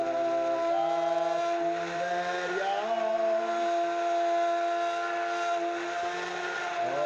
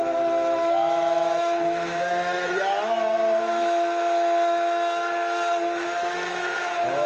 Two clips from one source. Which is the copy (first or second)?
second